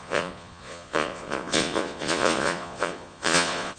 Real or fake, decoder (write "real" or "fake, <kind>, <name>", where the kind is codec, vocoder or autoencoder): fake, vocoder, Vocos